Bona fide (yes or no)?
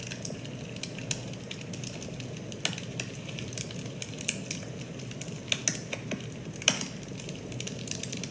yes